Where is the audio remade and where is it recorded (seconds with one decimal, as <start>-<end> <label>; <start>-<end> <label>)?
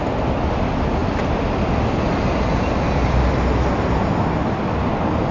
0.0-5.3 recorded